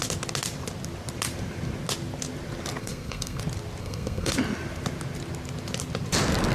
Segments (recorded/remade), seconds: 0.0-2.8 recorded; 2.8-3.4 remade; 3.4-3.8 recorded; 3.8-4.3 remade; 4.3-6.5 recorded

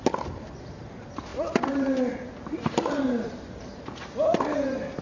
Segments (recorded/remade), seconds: 0.0-1.3 recorded; 1.3-3.8 remade; 3.8-5.0 recorded

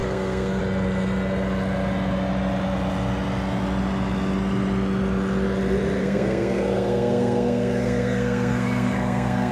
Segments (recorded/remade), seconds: 0.0-0.6 remade; 0.6-6.0 recorded; 6.0-9.5 remade

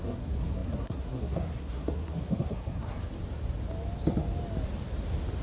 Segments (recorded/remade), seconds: 0.0-3.0 remade; 3.0-5.4 recorded

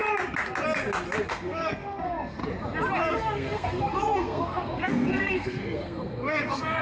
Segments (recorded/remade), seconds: 0.0-1.3 recorded; 1.3-2.4 remade; 2.4-3.1 recorded; 3.1-6.8 remade

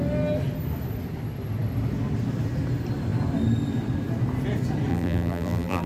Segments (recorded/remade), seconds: 0.0-4.9 recorded; 4.9-5.9 remade